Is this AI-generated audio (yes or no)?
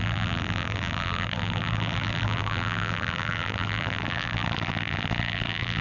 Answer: yes